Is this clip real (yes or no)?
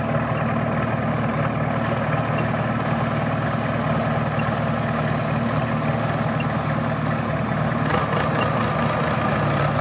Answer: yes